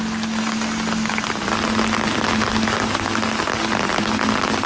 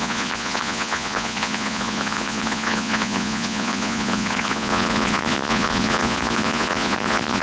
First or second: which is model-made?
second